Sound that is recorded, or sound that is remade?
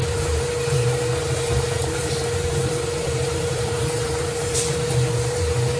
remade